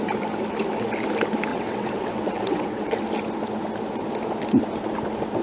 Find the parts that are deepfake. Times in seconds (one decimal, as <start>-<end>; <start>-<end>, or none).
1.5-3.0